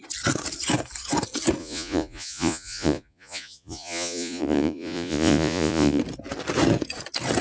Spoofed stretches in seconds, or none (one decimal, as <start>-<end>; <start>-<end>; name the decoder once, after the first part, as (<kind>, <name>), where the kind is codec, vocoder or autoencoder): 1.6-6.0 (vocoder, Vocos)